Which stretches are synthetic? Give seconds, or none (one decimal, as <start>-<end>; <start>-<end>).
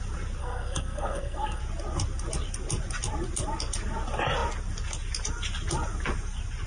0.4-1.6